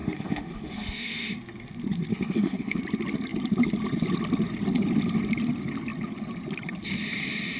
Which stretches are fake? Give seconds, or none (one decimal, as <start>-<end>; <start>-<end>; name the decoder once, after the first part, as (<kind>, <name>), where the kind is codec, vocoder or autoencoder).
0.0-1.3 (autoencoder, DAC-VAE); 2.1-2.8